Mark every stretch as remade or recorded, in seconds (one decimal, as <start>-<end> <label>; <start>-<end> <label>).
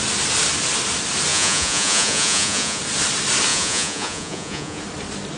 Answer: 0.0-1.3 recorded; 1.3-2.8 remade; 2.8-3.5 recorded; 3.5-4.8 remade; 4.8-5.4 recorded